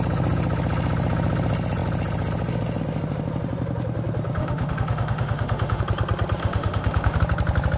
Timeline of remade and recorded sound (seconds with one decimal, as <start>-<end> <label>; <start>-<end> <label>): 0.0-4.4 recorded; 4.4-5.8 remade; 5.8-6.4 recorded; 6.4-7.2 remade; 7.2-7.8 recorded